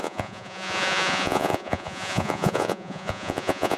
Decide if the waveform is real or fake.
fake